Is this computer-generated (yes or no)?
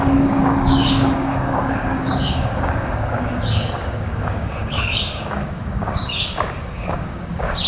yes